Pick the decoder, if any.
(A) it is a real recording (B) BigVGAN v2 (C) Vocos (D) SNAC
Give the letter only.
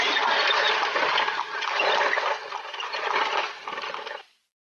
A